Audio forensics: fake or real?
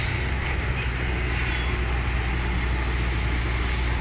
real